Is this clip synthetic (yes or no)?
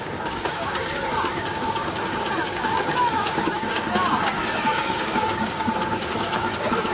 yes